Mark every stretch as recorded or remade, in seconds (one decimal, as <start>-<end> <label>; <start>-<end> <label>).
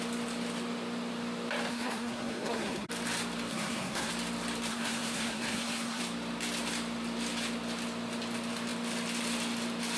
0.0-1.7 recorded; 1.7-2.9 remade; 2.9-3.5 recorded; 3.5-4.1 remade; 4.1-4.7 recorded; 4.7-6.0 remade; 6.0-10.0 recorded